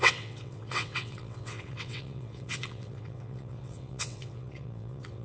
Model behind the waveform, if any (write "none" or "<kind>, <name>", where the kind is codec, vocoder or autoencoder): vocoder, WaveNeXt